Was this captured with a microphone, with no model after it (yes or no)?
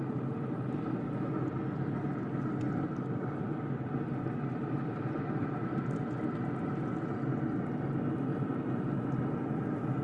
yes